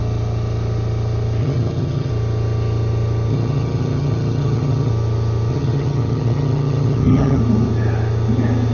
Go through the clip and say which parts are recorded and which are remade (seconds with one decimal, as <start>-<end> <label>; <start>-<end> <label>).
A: 0.0-1.4 recorded; 1.4-2.1 remade; 2.1-3.3 recorded; 3.3-4.9 remade; 4.9-5.5 recorded; 5.5-7.4 remade; 7.4-8.7 recorded